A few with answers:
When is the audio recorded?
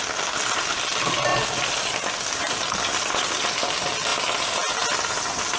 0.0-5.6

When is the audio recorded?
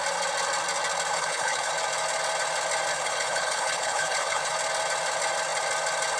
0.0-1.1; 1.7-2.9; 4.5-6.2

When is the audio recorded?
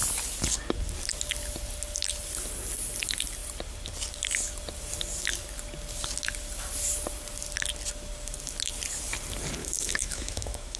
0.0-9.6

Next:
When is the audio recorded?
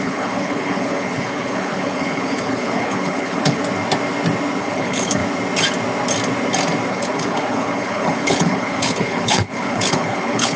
3.6-4.6; 5.2-6.9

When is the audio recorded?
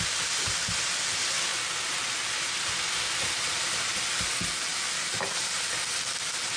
0.0-6.6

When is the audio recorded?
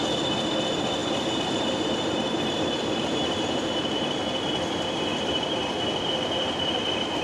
0.0-1.0; 4.2-5.1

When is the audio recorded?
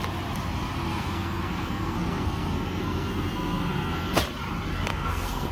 0.0-0.9; 4.2-4.9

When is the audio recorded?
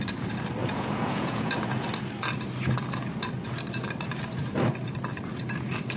0.0-0.6; 1.5-6.0